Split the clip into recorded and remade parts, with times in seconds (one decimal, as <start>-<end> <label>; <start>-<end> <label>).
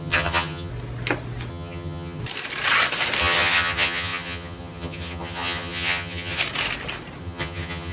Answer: 0.0-0.7 remade; 0.7-1.5 recorded; 1.5-2.2 remade; 2.2-3.2 recorded; 3.2-6.4 remade; 6.4-7.2 recorded; 7.2-7.9 remade